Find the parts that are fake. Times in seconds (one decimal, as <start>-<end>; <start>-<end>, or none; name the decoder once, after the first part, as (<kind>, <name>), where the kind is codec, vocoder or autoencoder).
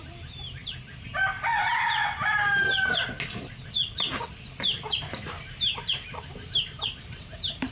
0.0-0.6 (vocoder, BigVGAN v2); 4.6-7.7